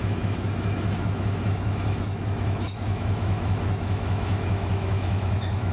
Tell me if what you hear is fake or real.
fake